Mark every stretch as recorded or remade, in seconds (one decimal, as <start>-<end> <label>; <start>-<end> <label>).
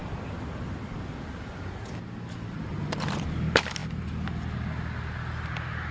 0.0-5.9 recorded